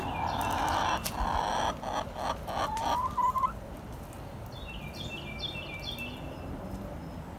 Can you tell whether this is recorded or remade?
recorded